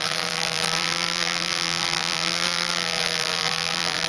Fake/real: fake